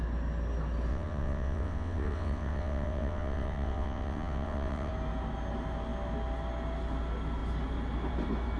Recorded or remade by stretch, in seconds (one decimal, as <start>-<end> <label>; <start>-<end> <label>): 0.0-0.9 recorded; 0.9-4.9 remade; 4.9-8.6 recorded